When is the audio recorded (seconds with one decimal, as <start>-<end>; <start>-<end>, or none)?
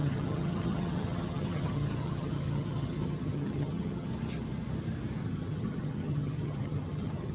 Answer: 4.1-5.2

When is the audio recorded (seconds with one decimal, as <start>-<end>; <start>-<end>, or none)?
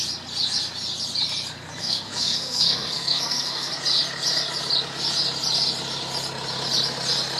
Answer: 0.0-1.8; 3.7-7.4